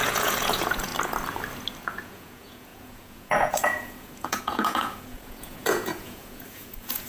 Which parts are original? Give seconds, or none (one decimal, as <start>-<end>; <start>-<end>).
0.9-1.8